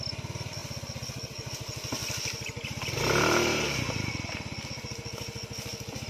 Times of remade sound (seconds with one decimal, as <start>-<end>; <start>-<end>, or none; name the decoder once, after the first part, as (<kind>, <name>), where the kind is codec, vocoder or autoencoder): none

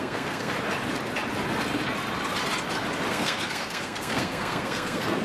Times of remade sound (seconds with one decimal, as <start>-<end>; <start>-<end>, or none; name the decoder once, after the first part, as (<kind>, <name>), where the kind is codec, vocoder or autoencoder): 0.0-0.5 (codec, SNAC); 3.1-5.2

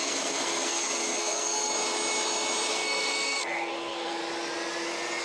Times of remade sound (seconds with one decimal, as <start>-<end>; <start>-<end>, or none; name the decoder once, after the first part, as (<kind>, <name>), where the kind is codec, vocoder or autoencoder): 0.0-1.7 (codec, SNAC); 2.7-4.2

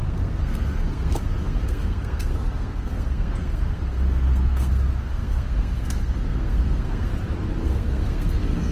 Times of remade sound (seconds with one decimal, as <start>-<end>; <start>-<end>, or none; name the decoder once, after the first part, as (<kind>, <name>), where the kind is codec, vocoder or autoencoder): 0.0-7.1 (codec, SNAC); 7.6-8.7

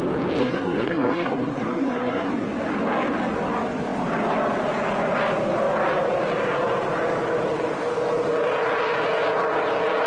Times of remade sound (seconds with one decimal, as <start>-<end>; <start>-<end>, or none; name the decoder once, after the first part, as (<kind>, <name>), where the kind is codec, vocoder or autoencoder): 0.4-2.3 (codec, SNAC)

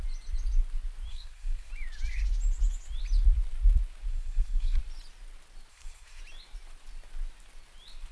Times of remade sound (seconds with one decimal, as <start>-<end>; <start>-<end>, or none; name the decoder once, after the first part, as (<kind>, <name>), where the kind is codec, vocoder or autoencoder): 1.1-1.7 (codec, SNAC); 4.1-4.8; 5.7-6.2

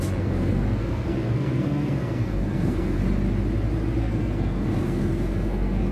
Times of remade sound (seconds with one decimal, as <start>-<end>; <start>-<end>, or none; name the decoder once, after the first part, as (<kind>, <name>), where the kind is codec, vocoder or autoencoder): 0.0-3.0 (codec, SNAC); 4.0-5.9

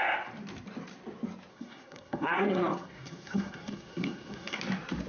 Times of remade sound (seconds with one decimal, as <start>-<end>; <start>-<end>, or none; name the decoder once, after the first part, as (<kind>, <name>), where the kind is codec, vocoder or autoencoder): 1.5-4.6 (codec, SNAC)